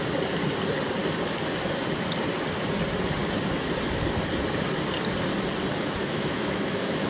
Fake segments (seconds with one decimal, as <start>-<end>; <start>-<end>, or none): 5.7-7.1